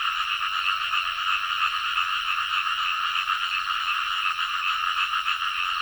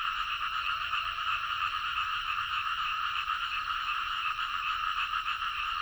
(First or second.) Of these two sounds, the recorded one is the first